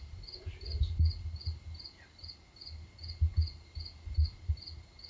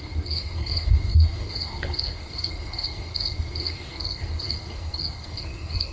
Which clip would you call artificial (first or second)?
second